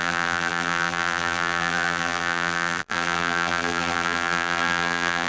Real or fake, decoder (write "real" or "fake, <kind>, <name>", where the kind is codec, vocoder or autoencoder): fake, vocoder, BigVGAN v2